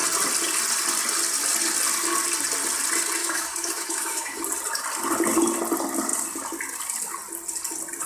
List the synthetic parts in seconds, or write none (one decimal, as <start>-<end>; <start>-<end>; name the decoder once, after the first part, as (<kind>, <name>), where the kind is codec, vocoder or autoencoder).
3.2-4.4 (autoencoder, DAC-VAE)